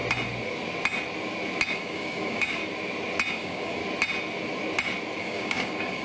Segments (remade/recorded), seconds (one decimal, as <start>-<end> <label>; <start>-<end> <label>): 0.0-1.7 recorded; 1.7-2.6 remade; 2.6-3.3 recorded; 3.3-3.8 remade; 3.8-5.2 recorded; 5.2-6.0 remade